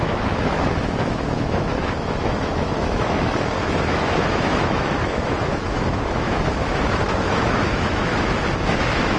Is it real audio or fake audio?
fake